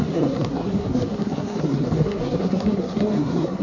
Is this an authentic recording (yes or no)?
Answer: no